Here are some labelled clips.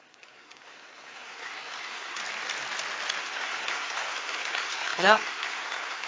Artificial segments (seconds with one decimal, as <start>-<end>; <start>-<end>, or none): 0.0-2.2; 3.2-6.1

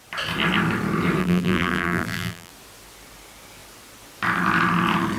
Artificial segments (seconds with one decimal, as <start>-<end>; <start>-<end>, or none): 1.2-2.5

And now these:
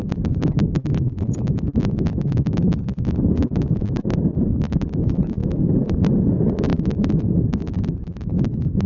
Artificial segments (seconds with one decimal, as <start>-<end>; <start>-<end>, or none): 0.6-1.6

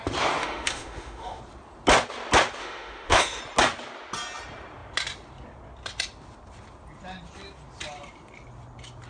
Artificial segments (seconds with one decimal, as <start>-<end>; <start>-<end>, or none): 0.4-1.4; 2.6-3.4

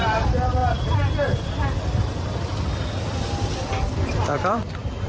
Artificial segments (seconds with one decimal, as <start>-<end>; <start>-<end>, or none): 0.0-0.6; 3.7-5.1